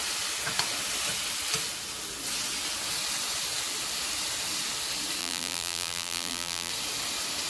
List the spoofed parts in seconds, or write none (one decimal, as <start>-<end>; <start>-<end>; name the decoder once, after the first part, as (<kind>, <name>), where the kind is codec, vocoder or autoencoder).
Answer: 5.2-6.7 (vocoder, BigVGAN v2)